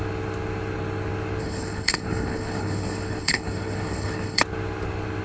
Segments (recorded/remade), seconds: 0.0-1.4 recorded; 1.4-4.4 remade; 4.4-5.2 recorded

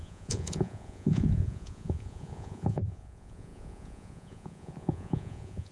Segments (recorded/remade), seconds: 0.0-5.7 remade

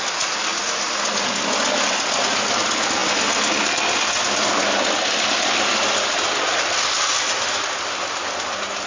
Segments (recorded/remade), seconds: 0.0-8.9 recorded

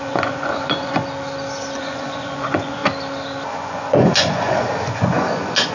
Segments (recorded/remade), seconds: 0.0-1.0 remade; 1.0-1.8 recorded; 1.8-2.8 remade; 2.8-3.5 recorded; 3.5-5.7 remade

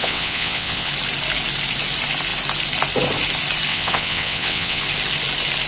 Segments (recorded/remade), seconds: 0.0-0.9 remade; 0.9-3.7 recorded; 3.7-4.8 remade; 4.8-5.7 recorded